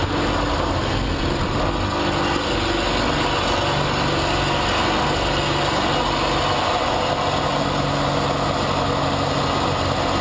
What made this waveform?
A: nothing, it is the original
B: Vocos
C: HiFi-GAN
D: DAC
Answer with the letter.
A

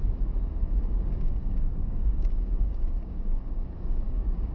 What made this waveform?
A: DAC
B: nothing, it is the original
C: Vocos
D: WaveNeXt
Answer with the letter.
A